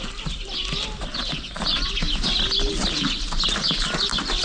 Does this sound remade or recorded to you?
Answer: recorded